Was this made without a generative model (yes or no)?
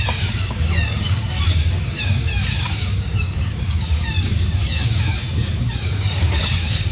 no